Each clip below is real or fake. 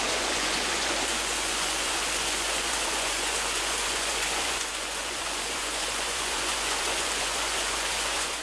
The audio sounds fake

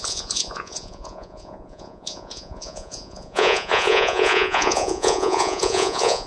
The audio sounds fake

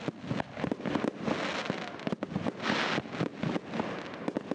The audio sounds real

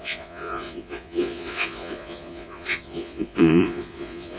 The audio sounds fake